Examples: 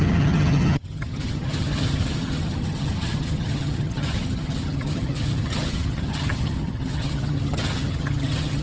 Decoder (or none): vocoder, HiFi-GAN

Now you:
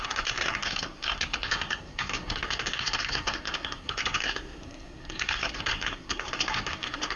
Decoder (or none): codec, SNAC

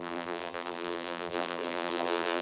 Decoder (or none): vocoder, BigVGAN v2